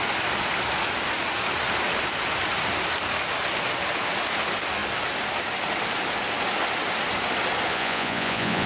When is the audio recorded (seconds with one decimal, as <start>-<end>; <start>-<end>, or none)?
0.0-7.7